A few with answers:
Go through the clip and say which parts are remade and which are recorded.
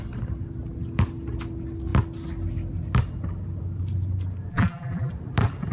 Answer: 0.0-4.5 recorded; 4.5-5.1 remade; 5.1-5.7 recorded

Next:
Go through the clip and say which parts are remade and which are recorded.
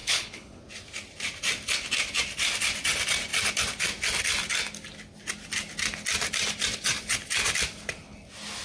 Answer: 0.0-0.6 remade; 0.6-8.6 recorded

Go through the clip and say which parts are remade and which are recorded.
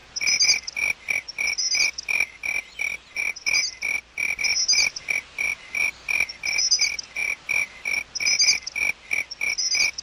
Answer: 0.0-10.0 recorded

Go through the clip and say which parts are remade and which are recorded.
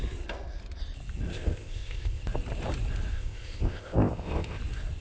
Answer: 0.0-1.3 recorded; 1.3-2.2 remade; 2.2-3.1 recorded; 3.1-4.6 remade; 4.6-5.0 recorded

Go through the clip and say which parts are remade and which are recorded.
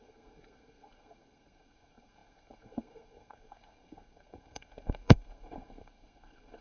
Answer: 0.0-6.6 remade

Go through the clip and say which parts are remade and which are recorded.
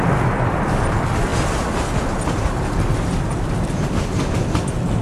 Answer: 0.0-5.0 recorded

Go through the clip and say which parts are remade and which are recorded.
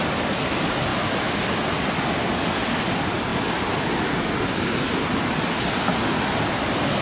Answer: 0.0-7.0 recorded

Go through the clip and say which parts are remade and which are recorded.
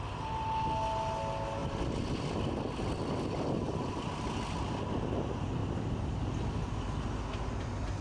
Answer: 0.0-8.0 recorded